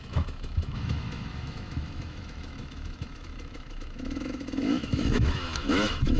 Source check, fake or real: fake